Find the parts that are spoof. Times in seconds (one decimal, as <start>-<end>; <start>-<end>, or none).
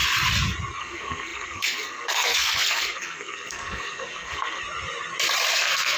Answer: 0.8-4.6; 5.5-6.0